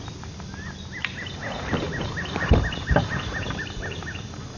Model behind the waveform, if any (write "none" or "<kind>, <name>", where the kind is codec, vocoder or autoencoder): none